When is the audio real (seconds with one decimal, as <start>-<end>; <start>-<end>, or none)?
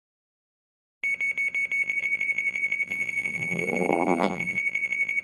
0.0-1.8